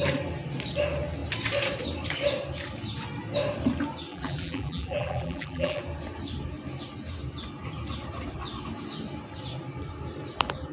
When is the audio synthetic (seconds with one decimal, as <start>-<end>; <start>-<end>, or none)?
4.1-5.8